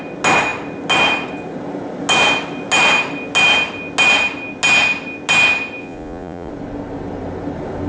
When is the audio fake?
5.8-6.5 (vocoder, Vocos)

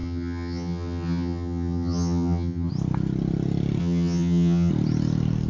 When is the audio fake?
0.0-2.7 (vocoder, HiFi-GAN); 3.8-4.7

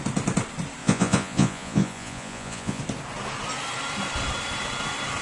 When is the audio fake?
0.8-2.8 (vocoder, Vocos)

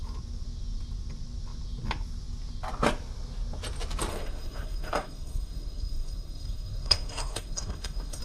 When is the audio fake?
4.1-8.2 (codec, SNAC)

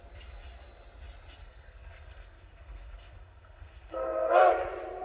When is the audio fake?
1.4-4.4 (codec, SNAC)

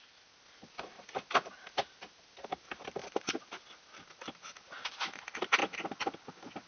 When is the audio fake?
none

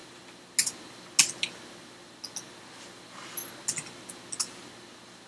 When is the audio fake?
none

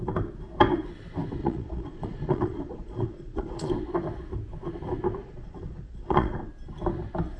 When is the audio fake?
1.4-3.7 (vocoder, Vocos); 5.2-6.5